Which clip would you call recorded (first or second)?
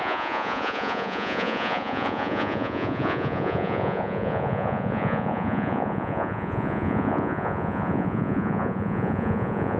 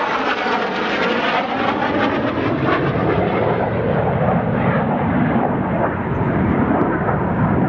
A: second